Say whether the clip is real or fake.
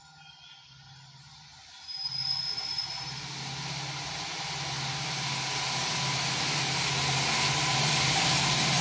real